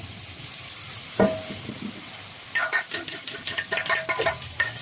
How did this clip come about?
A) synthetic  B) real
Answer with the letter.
B